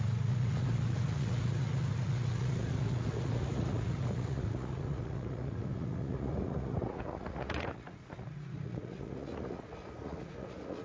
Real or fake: fake